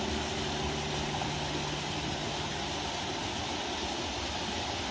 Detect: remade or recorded recorded